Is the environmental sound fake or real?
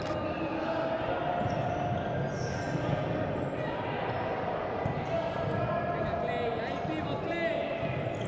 real